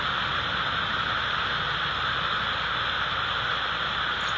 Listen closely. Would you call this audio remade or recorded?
recorded